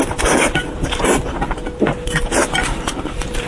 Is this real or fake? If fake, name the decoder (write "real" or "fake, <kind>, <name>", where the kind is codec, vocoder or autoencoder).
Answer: real